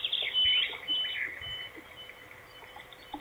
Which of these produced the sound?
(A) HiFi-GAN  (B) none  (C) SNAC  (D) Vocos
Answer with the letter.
B